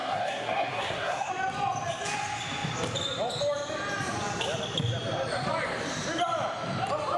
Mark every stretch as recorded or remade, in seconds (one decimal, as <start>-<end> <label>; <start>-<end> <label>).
0.0-1.3 remade; 1.3-7.2 recorded